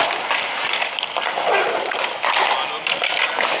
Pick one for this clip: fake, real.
real